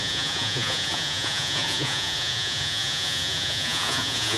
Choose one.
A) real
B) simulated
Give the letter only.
B